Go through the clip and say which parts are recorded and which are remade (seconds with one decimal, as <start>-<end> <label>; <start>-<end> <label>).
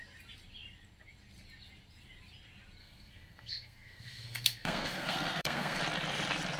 0.0-2.8 recorded; 2.8-5.8 remade; 5.8-6.6 recorded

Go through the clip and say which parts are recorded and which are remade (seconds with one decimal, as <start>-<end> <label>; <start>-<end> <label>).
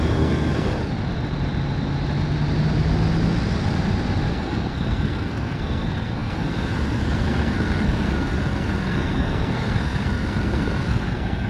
0.0-0.8 remade; 0.8-4.3 recorded; 4.3-11.5 remade